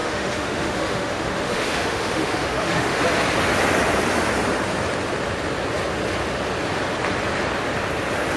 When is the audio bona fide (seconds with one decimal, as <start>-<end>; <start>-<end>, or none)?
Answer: 3.0-8.4